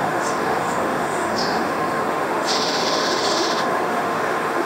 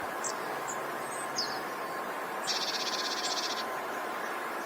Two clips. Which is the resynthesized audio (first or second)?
first